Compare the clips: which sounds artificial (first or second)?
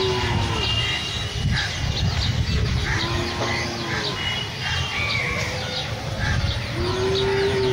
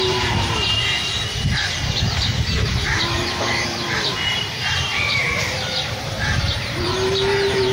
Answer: second